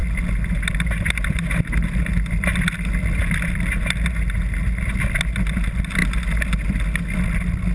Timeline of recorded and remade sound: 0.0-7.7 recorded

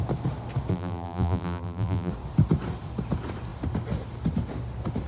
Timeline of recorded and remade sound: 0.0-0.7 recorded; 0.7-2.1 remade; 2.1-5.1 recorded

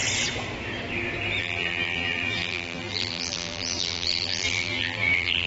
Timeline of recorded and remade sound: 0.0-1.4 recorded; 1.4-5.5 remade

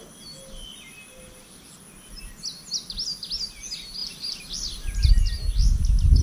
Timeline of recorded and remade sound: 0.0-6.2 recorded